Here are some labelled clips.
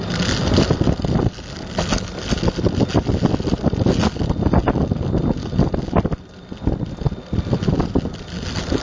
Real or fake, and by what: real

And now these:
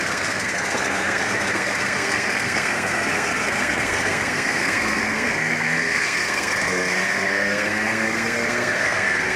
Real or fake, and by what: fake, codec, SNAC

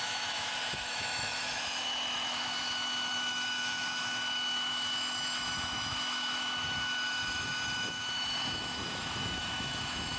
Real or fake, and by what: fake, autoencoder, DAC-VAE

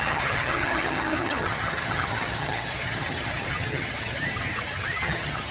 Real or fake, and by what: fake, vocoder, HiFi-GAN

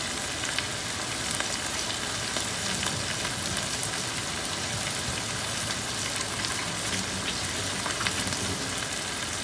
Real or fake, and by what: real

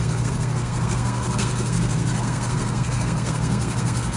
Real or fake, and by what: fake, codec, SNAC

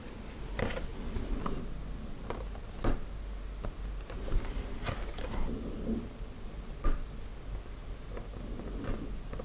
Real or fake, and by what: real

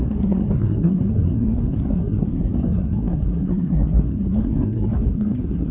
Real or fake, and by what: fake, codec, SNAC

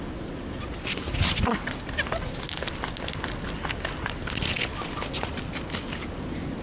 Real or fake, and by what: real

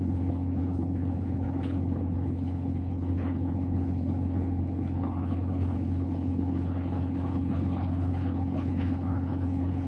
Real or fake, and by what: fake, codec, HILCodec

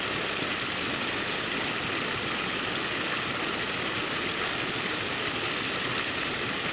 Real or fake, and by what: real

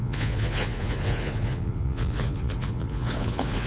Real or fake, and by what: fake, vocoder, Vocos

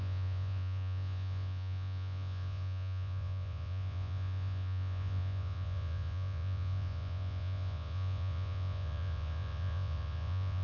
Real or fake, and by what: fake, vocoder, Vocos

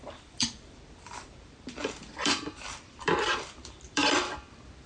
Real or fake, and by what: fake, vocoder, BigVGAN v2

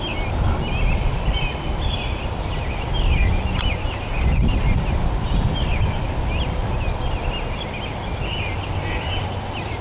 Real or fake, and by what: real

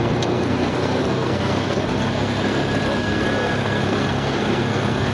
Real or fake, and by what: fake, codec, SNAC